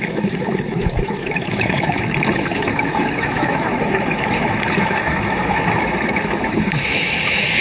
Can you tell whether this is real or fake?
fake